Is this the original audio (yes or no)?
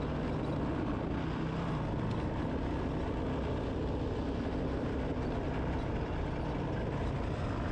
yes